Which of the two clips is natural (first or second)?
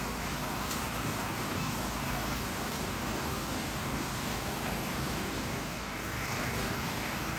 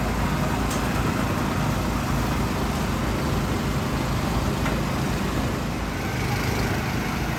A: second